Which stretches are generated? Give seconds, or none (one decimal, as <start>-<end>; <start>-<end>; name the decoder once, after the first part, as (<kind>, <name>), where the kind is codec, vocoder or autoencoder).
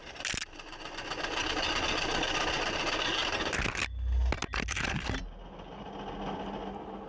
none